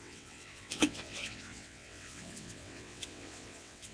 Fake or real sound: fake